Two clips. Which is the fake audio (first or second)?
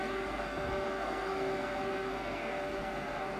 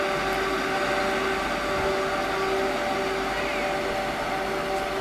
first